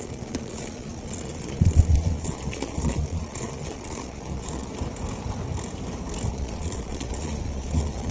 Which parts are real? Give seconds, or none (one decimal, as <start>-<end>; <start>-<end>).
4.7-6.3